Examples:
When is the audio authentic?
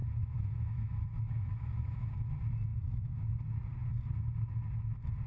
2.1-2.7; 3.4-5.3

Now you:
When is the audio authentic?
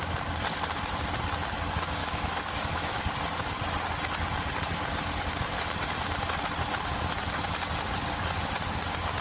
0.0-2.0; 3.0-9.2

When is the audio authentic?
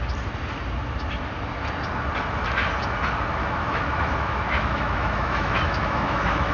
0.0-3.4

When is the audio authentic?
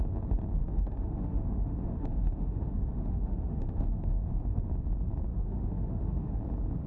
0.0-0.6; 4.7-5.3; 6.4-6.9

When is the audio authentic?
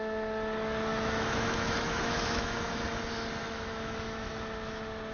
0.0-0.9; 2.8-3.4; 4.3-5.1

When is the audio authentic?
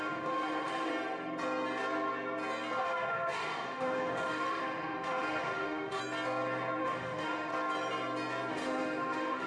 0.9-2.8; 6.0-6.8; 7.5-8.5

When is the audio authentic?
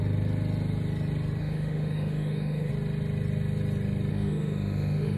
0.0-1.4; 2.7-4.1